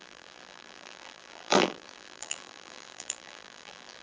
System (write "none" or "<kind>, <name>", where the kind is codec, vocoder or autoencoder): vocoder, BigVGAN v2